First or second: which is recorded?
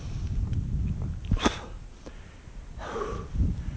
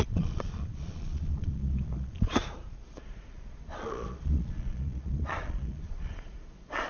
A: first